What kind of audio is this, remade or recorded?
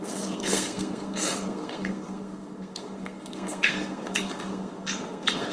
remade